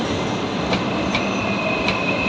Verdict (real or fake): real